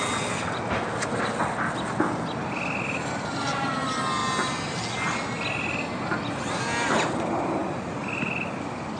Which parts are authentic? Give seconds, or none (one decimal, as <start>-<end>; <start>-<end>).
0.0-9.0

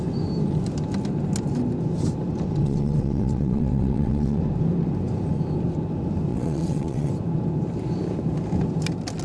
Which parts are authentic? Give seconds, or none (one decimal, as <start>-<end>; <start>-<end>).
0.0-2.6; 4.4-6.3; 7.1-9.2

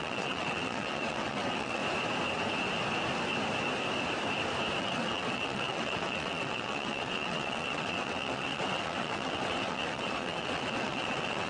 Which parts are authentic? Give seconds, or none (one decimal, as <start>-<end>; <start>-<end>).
1.8-4.8